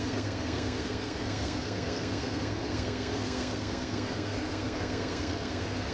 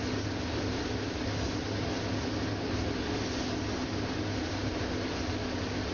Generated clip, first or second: first